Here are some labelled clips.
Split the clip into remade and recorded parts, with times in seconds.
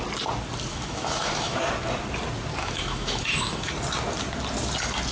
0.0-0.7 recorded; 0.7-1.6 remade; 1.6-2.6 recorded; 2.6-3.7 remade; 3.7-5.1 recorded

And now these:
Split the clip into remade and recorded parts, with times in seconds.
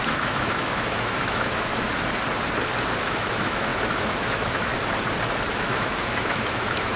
0.0-1.7 remade; 1.7-3.1 recorded; 3.1-4.7 remade; 4.7-5.5 recorded; 5.5-7.0 remade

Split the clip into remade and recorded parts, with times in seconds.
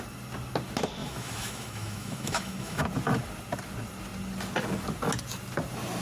0.0-1.0 recorded; 1.0-2.8 remade; 2.8-6.0 recorded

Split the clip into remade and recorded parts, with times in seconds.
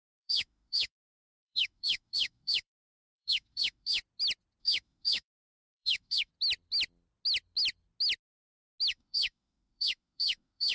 0.0-4.0 remade; 4.0-4.6 recorded; 4.6-6.3 remade; 6.3-8.9 recorded; 8.9-10.7 remade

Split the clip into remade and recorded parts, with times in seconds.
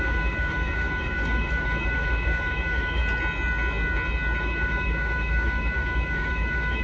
0.0-3.0 remade; 3.0-4.4 recorded; 4.4-6.8 remade